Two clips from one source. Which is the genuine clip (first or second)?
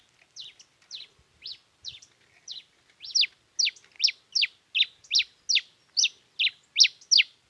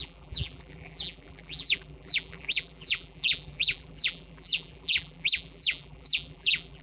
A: first